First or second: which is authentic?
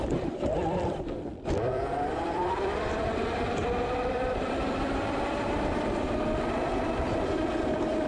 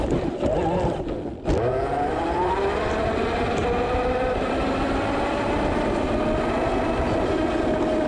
second